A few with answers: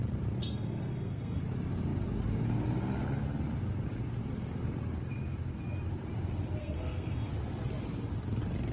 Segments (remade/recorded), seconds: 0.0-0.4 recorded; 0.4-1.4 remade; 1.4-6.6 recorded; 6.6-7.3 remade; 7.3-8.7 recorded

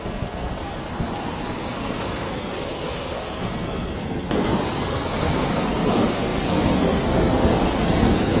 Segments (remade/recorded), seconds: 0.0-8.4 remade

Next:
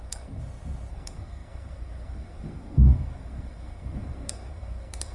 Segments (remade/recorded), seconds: 0.0-0.4 remade; 0.4-0.9 recorded; 0.9-5.1 remade